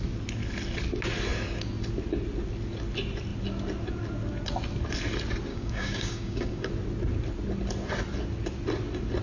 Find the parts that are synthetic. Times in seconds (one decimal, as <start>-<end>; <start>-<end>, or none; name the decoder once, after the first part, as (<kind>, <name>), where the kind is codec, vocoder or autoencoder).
5.5-6.7 (codec, DAC)